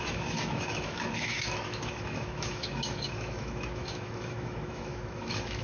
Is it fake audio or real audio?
fake